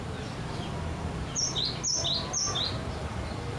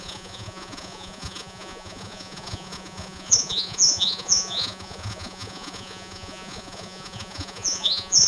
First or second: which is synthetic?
second